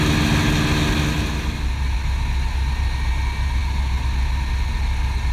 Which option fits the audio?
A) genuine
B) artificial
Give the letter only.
A